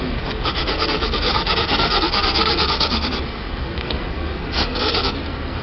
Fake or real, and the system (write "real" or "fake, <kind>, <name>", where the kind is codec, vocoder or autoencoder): fake, codec, SNAC